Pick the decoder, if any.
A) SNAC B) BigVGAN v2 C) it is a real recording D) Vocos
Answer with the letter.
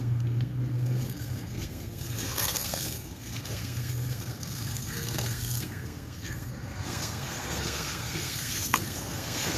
A